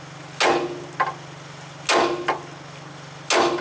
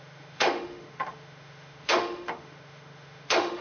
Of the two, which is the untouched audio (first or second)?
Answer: first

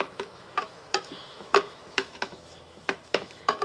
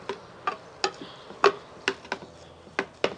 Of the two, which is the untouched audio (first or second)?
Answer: second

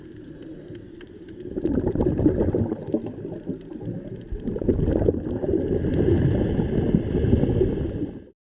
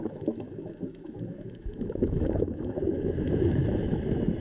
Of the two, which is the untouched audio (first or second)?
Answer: first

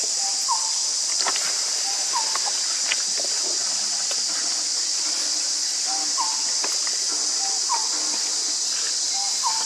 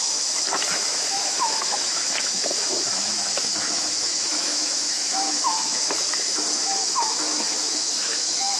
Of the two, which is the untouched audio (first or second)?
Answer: first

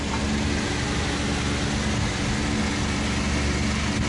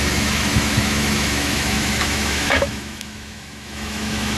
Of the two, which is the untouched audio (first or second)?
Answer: first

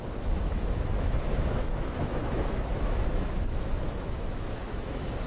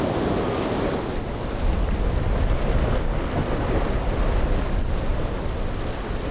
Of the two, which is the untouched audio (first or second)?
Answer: second